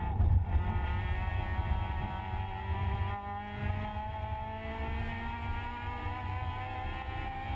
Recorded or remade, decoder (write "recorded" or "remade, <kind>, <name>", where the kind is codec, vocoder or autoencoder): recorded